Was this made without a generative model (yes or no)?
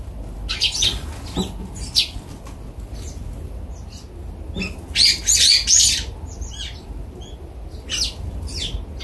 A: yes